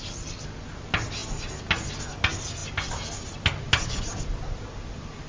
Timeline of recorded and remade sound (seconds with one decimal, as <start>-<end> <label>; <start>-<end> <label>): 0.0-5.3 recorded